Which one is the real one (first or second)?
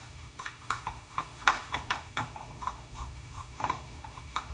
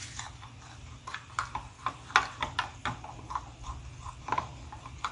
second